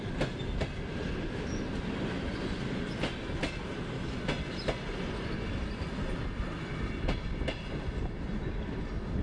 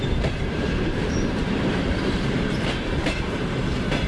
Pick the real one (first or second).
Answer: first